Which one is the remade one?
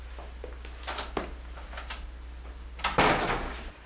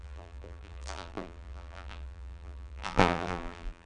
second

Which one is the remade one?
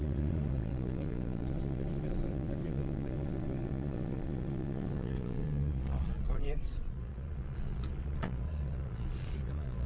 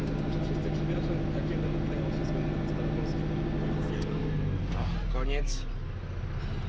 first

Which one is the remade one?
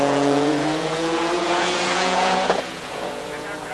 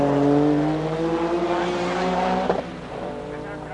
first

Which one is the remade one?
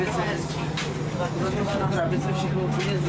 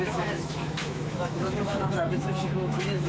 second